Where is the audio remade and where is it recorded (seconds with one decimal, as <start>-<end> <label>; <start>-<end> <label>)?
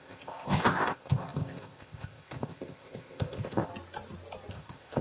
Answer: 0.0-3.7 remade; 3.7-4.5 recorded; 4.5-5.0 remade